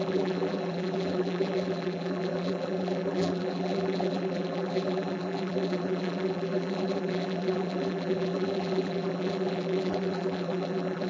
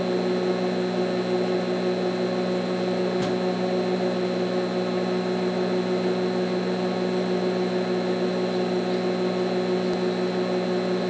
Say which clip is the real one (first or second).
second